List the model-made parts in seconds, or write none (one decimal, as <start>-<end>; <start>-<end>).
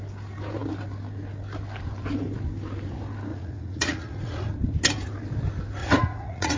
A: 3.3-4.5; 5.8-6.6